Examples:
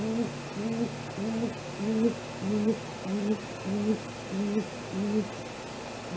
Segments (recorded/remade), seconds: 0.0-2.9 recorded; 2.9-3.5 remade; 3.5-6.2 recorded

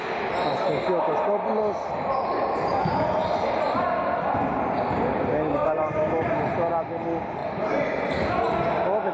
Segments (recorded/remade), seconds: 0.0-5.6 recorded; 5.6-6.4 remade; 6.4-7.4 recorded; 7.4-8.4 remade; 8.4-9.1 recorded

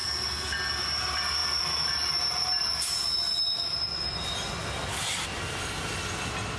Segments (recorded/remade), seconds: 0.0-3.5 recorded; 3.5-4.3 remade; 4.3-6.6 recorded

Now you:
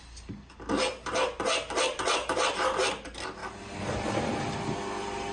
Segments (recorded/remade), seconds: 0.0-2.2 recorded; 2.2-2.8 remade; 2.8-5.3 recorded

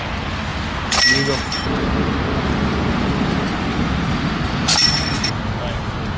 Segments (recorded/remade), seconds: 0.0-3.7 recorded; 3.7-4.2 remade; 4.2-6.2 recorded

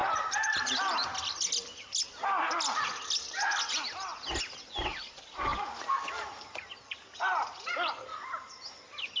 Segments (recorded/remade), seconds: 0.0-0.7 recorded; 0.7-1.1 remade; 1.1-4.9 recorded; 4.9-9.2 remade

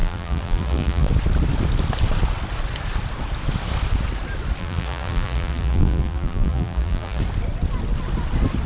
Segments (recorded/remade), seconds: 0.0-1.1 remade; 1.1-4.6 recorded; 4.6-7.2 remade; 7.2-8.7 recorded